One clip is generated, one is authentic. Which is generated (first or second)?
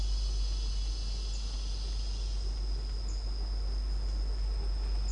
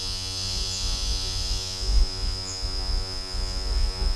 second